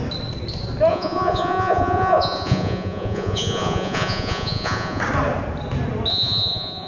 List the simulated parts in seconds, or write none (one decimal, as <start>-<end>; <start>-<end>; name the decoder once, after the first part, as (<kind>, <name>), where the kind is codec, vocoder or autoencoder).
0.9-5.0 (vocoder, Vocos); 6.1-6.9